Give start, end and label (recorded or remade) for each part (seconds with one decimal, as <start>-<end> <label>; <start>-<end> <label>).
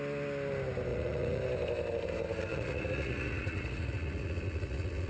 0.0-0.9 recorded; 0.9-1.4 remade; 1.4-2.5 recorded; 2.5-5.1 remade